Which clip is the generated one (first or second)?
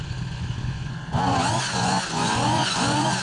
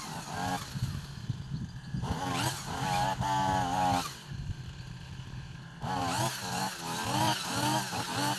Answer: first